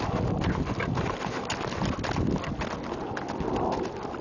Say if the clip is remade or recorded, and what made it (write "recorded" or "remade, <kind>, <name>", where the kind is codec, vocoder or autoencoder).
recorded